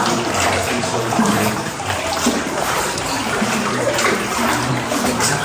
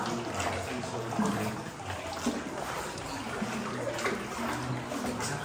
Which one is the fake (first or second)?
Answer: first